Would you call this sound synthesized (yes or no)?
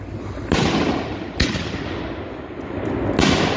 no